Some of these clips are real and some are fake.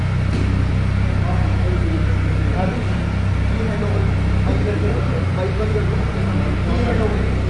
real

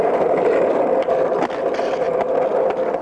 real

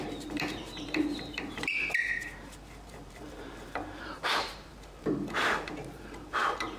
fake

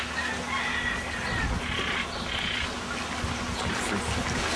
real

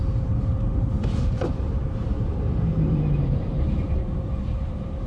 fake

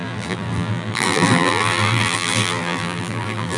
fake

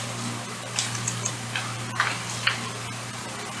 fake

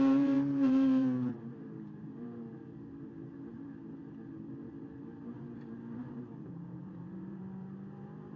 fake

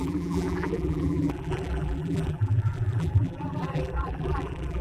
fake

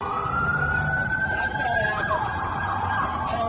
fake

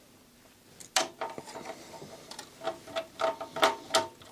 real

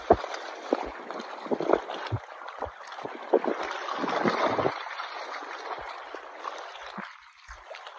real